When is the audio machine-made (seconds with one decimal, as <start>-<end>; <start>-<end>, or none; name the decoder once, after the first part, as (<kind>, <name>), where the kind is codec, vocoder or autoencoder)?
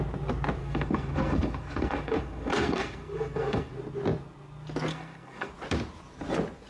0.6-3.7 (codec, SNAC); 4.9-5.5